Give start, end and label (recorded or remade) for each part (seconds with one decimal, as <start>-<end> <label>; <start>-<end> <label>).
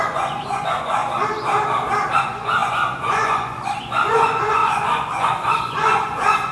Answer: 0.0-1.0 remade; 1.0-2.2 recorded; 2.2-6.5 remade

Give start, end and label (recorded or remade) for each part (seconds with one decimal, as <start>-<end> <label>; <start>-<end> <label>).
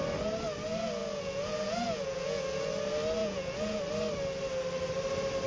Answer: 0.0-1.0 recorded; 1.0-2.4 remade; 2.4-3.2 recorded; 3.2-3.8 remade; 3.8-5.5 recorded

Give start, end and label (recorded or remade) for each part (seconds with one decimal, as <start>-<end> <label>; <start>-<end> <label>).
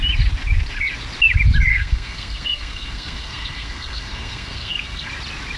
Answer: 0.0-1.7 recorded; 1.7-5.1 remade; 5.1-5.6 recorded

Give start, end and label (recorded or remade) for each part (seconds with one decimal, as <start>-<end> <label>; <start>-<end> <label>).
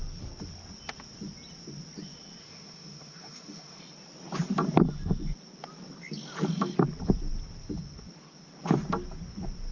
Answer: 0.0-2.4 recorded; 2.4-3.8 remade; 3.8-9.7 recorded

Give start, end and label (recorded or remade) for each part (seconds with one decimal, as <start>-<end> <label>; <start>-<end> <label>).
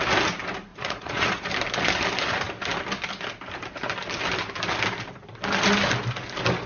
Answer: 0.0-0.7 recorded; 0.7-1.5 remade; 1.5-6.7 recorded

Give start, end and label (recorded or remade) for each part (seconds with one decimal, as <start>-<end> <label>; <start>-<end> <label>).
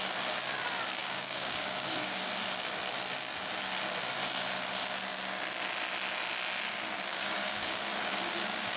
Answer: 0.0-1.0 recorded; 1.0-2.2 remade; 2.2-7.1 recorded; 7.1-7.8 remade; 7.8-8.8 recorded